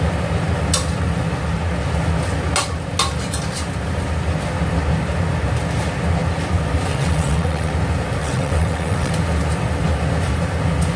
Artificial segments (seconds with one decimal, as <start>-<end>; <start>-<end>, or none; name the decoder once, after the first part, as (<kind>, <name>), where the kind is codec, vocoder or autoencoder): 6.9-7.7 (vocoder, WaveNeXt); 8.2-9.1